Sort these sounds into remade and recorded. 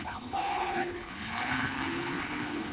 remade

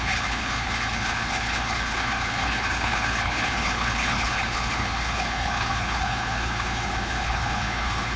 remade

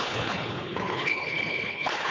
remade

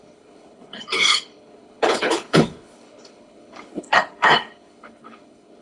remade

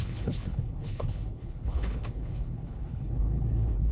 remade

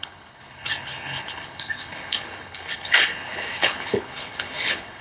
remade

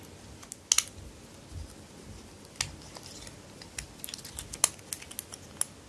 recorded